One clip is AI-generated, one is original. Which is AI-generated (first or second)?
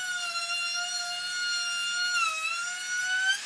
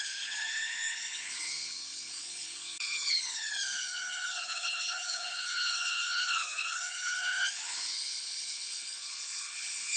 second